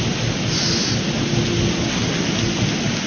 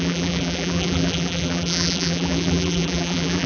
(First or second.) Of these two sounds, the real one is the first